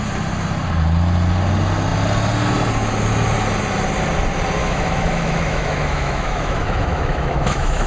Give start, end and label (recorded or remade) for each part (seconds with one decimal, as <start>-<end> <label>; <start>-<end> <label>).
0.0-4.6 recorded; 4.6-7.9 remade